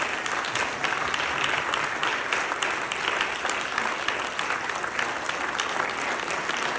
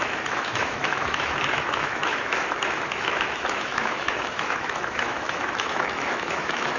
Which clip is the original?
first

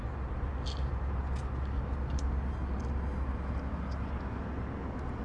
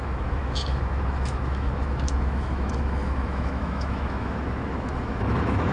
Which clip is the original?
first